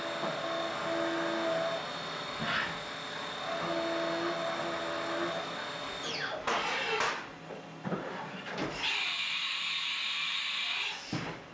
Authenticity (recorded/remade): recorded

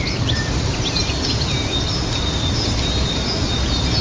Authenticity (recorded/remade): recorded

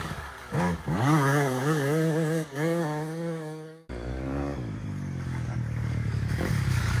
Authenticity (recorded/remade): remade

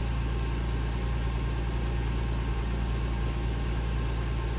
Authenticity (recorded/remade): recorded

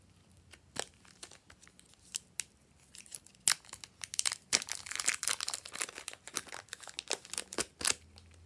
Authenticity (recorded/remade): recorded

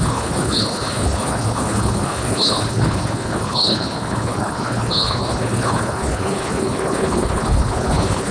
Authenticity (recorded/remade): remade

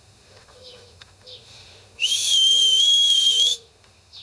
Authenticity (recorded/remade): remade